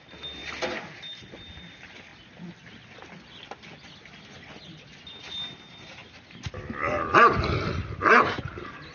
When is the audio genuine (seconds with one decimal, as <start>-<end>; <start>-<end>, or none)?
0.0-8.9